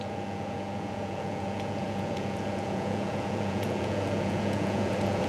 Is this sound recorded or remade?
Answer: remade